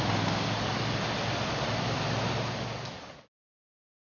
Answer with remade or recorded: recorded